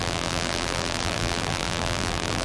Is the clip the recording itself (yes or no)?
no